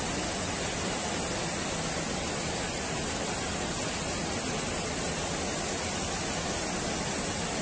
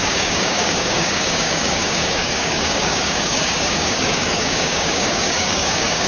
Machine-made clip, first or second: second